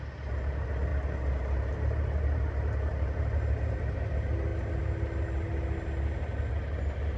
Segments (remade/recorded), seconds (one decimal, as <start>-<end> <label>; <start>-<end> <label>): 0.0-7.2 recorded